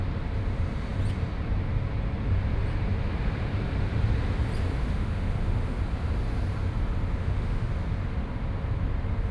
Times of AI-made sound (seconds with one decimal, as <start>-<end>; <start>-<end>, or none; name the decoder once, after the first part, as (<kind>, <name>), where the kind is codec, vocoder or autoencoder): 4.8-5.8 (autoencoder, DAC-VAE); 7.2-7.7